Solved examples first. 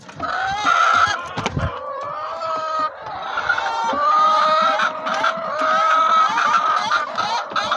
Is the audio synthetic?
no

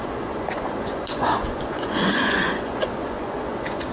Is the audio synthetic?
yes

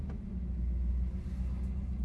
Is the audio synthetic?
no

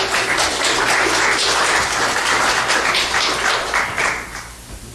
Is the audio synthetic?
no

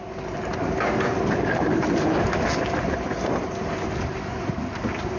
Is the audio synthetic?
no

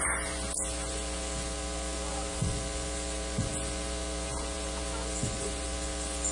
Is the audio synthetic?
yes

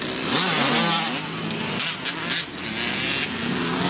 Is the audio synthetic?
no